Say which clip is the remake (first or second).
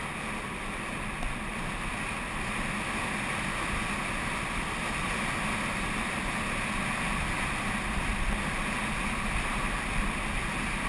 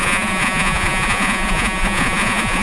second